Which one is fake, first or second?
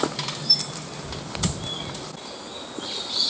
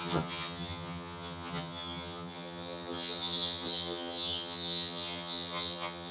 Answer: second